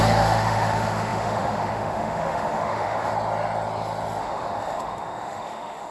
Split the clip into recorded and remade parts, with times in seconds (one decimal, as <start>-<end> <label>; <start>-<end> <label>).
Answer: 0.0-3.1 remade; 3.1-4.2 recorded; 4.2-5.9 remade